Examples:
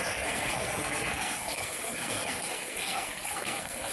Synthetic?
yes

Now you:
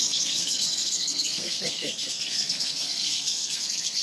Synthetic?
yes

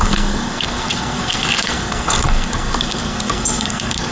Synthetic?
yes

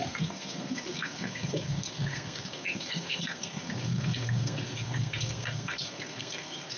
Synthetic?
yes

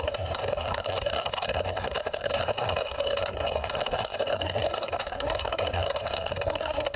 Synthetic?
yes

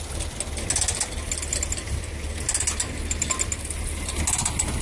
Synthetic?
no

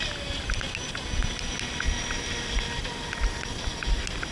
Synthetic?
no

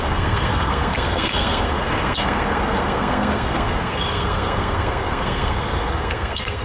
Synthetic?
yes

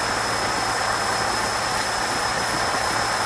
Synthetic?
no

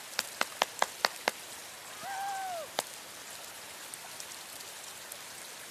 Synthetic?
no